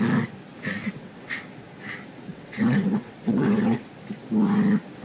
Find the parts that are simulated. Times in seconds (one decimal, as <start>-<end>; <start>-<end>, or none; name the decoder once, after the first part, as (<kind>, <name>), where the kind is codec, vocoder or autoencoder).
0.8-1.3 (vocoder, WaveNeXt); 2.3-3.9